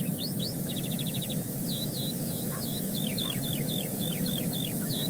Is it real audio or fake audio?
fake